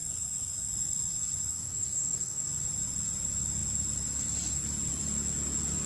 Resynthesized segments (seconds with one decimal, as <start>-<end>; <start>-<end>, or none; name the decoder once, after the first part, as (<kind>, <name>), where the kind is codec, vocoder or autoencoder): 1.5-2.5 (codec, DAC)

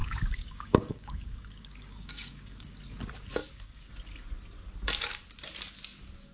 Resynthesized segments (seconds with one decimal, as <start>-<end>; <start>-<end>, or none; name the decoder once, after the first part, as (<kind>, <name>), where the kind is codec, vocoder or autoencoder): 0.0-2.8 (codec, DAC); 3.4-3.9

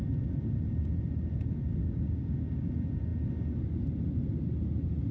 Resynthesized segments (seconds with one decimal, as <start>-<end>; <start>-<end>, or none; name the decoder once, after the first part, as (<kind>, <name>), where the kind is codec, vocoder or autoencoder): 1.8-2.7 (codec, DAC)

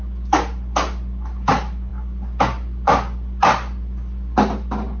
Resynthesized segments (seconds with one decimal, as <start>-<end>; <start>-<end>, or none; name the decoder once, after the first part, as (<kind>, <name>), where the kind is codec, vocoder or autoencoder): none

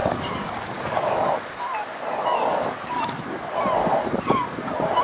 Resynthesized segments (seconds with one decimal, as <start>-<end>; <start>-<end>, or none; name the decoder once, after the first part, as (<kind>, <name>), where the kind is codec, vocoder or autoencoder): 0.0-3.0 (codec, DAC); 3.8-4.6

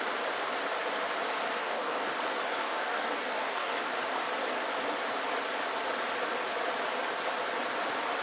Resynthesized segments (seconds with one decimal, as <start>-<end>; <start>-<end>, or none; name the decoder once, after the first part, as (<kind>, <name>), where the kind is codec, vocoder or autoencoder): 1.6-2.1 (codec, DAC); 2.6-3.8